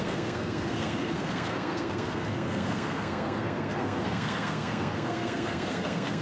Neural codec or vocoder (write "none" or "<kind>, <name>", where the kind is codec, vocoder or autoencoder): codec, SNAC